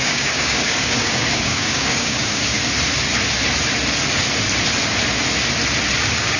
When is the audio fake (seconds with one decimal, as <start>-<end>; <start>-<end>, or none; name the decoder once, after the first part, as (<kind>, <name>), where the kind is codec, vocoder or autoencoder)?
0.0-2.6 (codec, DAC); 6.0-6.4